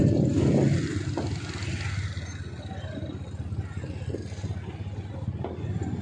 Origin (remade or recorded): recorded